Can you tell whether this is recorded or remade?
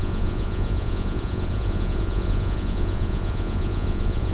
remade